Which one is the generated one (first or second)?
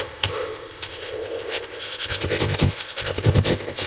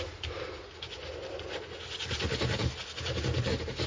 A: first